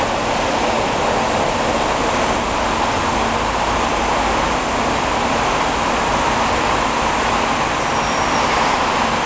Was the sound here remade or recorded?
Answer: recorded